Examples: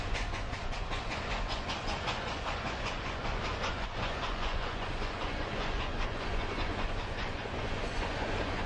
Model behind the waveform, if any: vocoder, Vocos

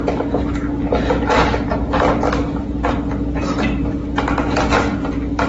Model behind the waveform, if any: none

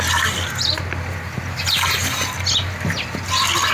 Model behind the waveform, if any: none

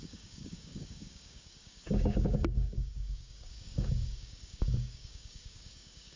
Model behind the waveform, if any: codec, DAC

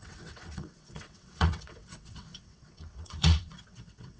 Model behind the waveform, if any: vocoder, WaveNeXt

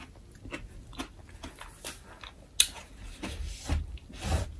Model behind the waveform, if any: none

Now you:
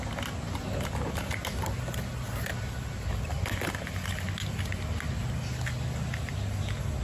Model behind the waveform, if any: none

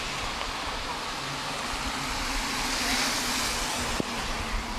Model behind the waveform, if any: none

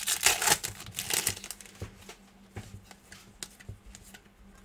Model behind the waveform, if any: none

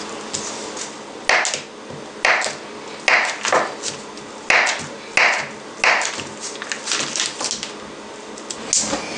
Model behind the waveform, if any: none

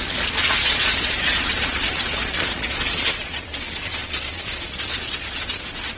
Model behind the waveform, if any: vocoder, Vocos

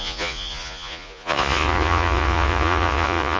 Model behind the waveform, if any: vocoder, Vocos